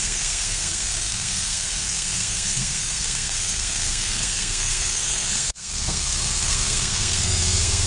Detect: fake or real fake